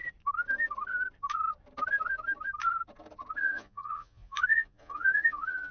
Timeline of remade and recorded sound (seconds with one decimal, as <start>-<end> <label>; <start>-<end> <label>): 0.0-3.4 recorded; 3.4-5.7 remade